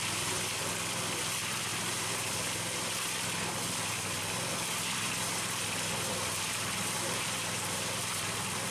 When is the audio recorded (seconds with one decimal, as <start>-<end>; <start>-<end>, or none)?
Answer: 7.4-8.0